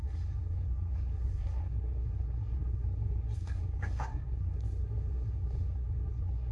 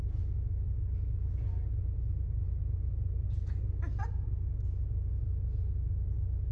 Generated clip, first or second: first